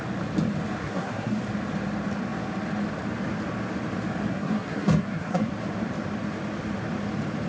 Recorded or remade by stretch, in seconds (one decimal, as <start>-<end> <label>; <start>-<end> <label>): 0.0-0.8 recorded; 0.8-1.4 remade; 1.4-4.3 recorded; 4.3-5.5 remade; 5.5-7.5 recorded